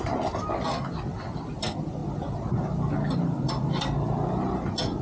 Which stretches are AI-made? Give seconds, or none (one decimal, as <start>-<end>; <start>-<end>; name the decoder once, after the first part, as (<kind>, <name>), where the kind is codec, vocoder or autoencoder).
none